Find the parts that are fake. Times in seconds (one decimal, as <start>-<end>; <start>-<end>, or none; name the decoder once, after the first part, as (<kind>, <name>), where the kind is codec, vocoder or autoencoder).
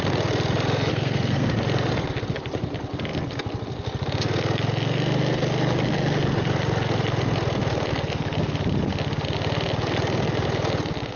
0.9-1.5 (codec, SNAC)